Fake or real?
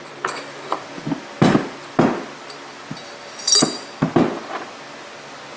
real